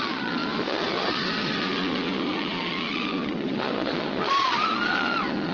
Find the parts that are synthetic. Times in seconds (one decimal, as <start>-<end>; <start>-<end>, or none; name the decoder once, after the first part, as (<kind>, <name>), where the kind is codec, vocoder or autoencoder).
0.0-5.5 (vocoder, Vocos)